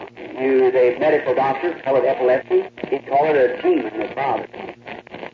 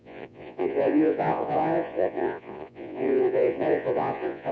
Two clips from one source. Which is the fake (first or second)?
second